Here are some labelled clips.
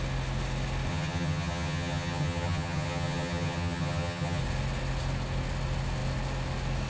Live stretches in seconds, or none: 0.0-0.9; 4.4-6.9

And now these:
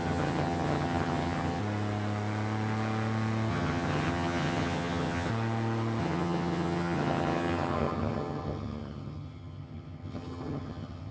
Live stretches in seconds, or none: 1.6-3.5; 5.3-6.0

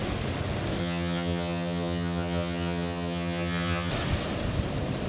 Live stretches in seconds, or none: 0.0-0.8; 3.9-5.1

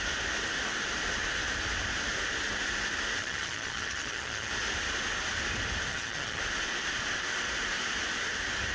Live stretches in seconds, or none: 0.0-3.2; 4.5-5.9; 6.4-8.7

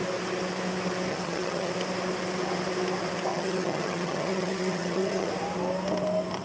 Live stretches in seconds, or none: 0.0-1.1; 1.7-3.3; 5.3-6.4

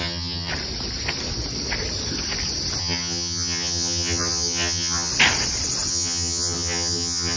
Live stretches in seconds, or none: 0.5-2.8; 5.1-5.9

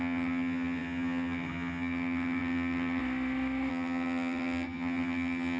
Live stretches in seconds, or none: 3.0-3.7